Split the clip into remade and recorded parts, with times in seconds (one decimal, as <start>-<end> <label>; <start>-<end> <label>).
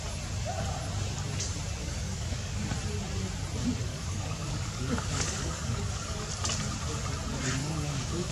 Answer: 0.0-1.8 recorded; 1.8-2.6 remade; 2.6-3.9 recorded; 3.9-6.3 remade; 6.3-7.6 recorded; 7.6-8.3 remade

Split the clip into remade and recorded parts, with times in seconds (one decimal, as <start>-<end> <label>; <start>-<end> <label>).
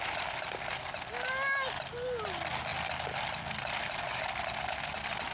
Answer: 0.0-5.3 recorded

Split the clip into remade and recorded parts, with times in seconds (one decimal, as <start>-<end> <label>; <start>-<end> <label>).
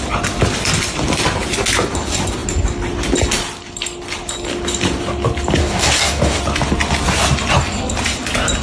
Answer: 0.0-5.6 recorded; 5.6-6.4 remade; 6.4-8.6 recorded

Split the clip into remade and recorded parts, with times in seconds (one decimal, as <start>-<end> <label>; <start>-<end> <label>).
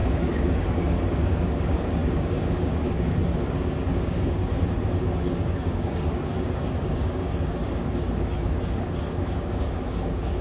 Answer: 0.0-10.4 remade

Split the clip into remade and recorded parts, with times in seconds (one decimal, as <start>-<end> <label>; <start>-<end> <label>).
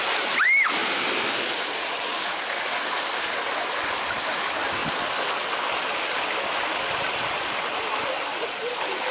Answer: 0.0-9.1 recorded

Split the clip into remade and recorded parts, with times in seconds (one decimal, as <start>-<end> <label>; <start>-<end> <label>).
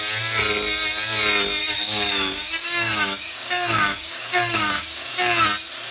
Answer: 0.0-1.6 recorded; 1.6-5.1 remade; 5.1-5.9 recorded